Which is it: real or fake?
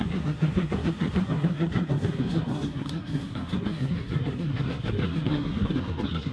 fake